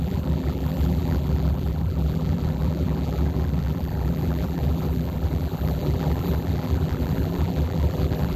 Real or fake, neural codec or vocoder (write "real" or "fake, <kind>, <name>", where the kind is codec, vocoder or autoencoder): fake, vocoder, BigVGAN v2